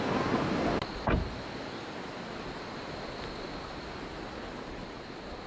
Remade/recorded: recorded